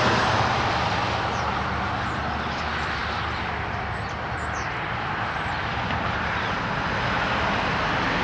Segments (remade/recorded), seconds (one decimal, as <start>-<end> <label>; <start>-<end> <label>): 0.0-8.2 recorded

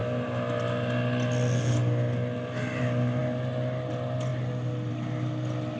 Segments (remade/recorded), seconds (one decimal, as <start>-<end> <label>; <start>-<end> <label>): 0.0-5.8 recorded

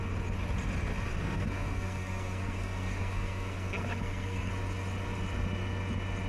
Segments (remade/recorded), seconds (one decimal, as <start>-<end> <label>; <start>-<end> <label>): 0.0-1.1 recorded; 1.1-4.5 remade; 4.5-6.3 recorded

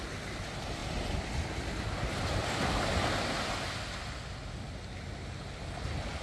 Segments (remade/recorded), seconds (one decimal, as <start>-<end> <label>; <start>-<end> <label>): 0.0-6.2 recorded

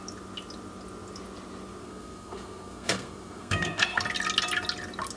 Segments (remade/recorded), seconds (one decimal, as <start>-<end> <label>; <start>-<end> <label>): 0.0-1.8 recorded; 1.8-4.0 remade; 4.0-5.2 recorded

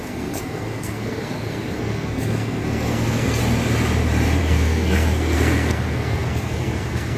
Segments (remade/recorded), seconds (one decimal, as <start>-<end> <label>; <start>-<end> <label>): 0.0-3.4 remade; 3.4-4.4 recorded; 4.4-7.2 remade

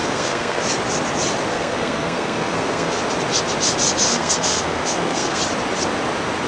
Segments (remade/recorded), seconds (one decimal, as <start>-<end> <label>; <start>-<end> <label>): 0.0-0.6 remade; 0.6-1.5 recorded; 1.5-3.0 remade; 3.0-4.1 recorded; 4.1-5.4 remade; 5.4-6.5 recorded

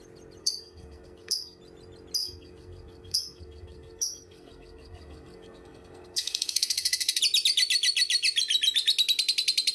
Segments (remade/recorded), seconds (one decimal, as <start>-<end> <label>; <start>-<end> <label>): 0.0-0.4 recorded; 0.4-1.6 remade; 1.6-2.2 recorded; 2.2-7.2 remade; 7.2-9.7 recorded